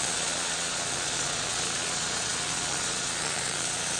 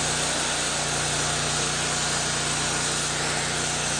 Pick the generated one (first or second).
first